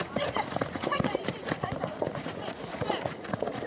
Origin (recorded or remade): remade